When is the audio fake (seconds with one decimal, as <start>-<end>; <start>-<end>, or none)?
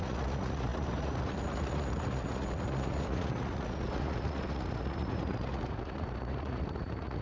0.0-7.2